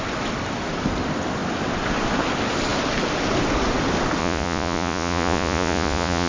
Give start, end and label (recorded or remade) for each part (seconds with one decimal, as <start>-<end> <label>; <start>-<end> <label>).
0.0-4.2 recorded; 4.2-6.3 remade